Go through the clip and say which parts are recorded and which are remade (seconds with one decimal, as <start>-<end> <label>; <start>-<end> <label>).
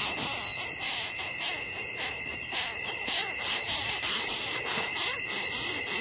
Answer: 0.0-1.8 recorded; 1.8-5.3 remade; 5.3-6.0 recorded